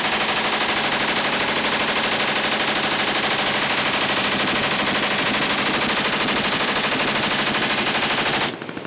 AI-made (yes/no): no